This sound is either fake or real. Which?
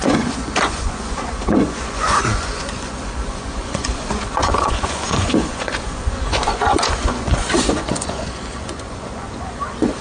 fake